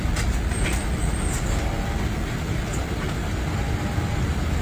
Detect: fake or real real